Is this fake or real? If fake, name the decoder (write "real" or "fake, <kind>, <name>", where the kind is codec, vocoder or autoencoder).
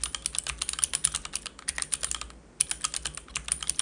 real